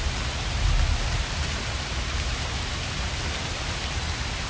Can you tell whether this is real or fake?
real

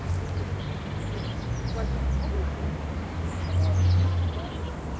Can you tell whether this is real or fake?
real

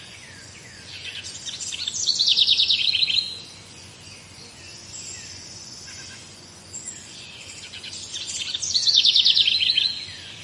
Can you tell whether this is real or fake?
fake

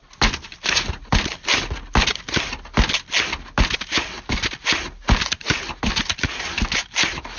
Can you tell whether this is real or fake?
real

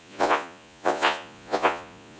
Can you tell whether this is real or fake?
fake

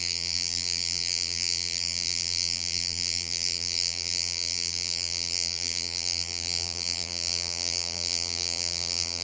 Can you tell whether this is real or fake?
fake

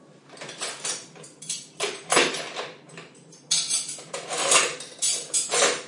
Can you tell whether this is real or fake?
real